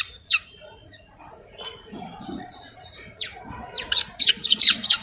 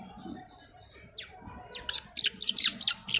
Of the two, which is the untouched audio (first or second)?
second